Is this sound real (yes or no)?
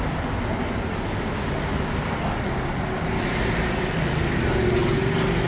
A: yes